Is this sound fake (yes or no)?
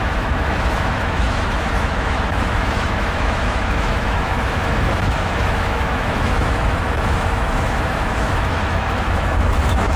yes